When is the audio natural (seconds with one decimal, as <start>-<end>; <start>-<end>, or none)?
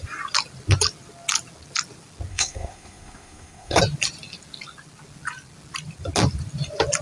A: 0.0-2.3; 3.8-7.0